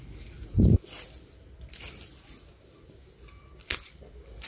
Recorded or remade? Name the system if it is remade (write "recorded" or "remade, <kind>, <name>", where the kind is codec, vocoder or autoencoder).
recorded